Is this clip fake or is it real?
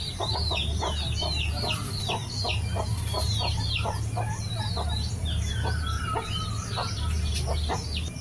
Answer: fake